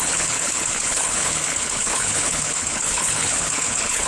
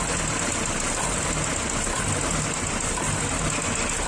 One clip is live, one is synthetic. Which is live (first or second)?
second